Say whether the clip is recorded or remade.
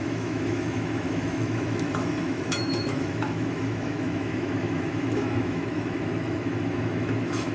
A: remade